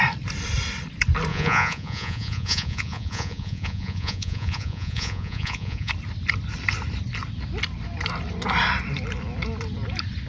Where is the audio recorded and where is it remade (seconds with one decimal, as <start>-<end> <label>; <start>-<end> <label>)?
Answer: 0.0-1.3 recorded; 1.3-5.9 remade; 5.9-10.3 recorded